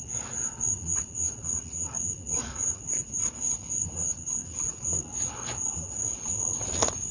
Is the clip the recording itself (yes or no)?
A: no